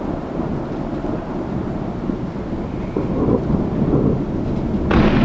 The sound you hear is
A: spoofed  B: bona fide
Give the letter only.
B